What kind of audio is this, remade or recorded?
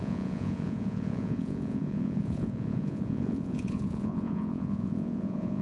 remade